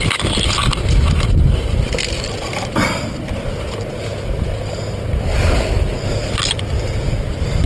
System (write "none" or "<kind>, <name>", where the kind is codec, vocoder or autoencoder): none